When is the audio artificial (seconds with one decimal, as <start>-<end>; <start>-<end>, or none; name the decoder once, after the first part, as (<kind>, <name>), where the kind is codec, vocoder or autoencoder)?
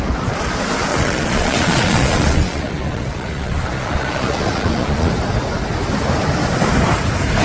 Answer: 0.9-5.1 (vocoder, Vocos)